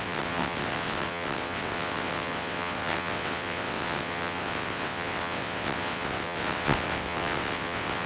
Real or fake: fake